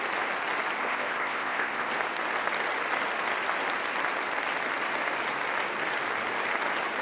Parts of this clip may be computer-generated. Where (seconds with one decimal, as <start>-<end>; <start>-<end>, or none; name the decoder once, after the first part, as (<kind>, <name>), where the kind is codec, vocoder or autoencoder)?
0.8-1.9 (codec, ZipCodec)